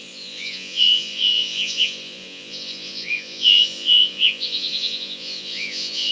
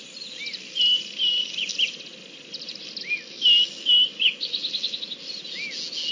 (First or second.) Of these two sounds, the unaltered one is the second